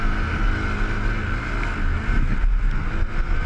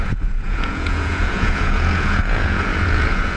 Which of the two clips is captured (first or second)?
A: first